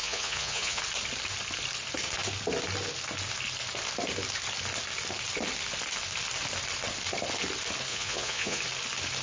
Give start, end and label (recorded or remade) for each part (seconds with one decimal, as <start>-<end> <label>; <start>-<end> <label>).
0.0-0.8 remade; 0.8-7.9 recorded; 7.9-8.6 remade; 8.6-9.2 recorded